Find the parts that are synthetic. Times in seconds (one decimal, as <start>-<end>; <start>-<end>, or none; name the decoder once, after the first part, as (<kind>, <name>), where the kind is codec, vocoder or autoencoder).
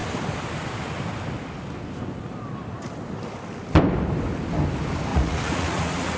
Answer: 5.1-6.2 (vocoder, Vocos)